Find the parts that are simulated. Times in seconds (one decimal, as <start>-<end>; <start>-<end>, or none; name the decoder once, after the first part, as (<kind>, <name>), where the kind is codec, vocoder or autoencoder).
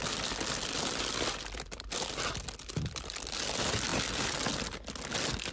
none